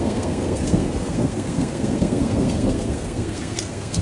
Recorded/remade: remade